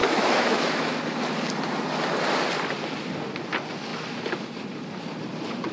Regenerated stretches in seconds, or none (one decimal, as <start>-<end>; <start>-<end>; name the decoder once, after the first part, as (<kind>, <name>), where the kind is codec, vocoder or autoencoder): 0.0-1.0 (autoencoder, DAC-VAE)